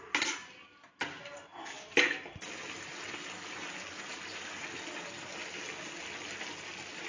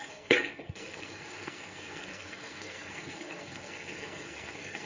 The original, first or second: first